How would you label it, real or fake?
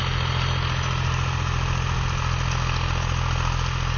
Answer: real